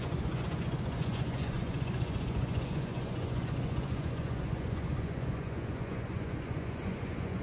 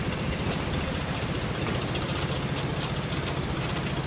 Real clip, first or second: second